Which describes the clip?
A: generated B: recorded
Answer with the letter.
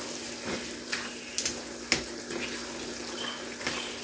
B